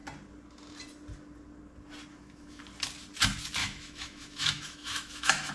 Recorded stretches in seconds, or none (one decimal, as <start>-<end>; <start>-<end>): 0.0-2.1; 2.6-3.6